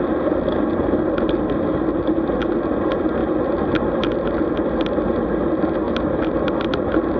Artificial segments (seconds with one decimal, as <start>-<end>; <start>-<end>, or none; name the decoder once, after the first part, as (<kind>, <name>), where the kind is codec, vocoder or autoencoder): none